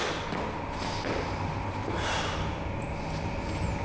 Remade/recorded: recorded